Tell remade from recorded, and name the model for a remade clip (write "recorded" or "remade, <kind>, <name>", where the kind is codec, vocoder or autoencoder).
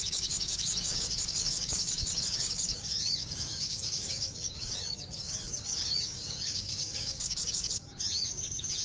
remade, codec, DAC